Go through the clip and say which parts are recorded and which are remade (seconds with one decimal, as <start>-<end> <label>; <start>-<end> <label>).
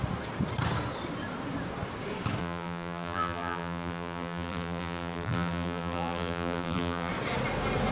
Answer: 0.0-2.4 recorded; 2.4-7.1 remade; 7.1-7.9 recorded